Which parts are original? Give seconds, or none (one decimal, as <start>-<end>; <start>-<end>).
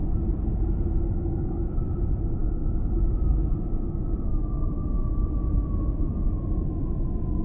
0.0-7.4